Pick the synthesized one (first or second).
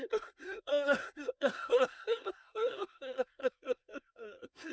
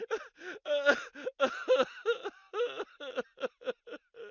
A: first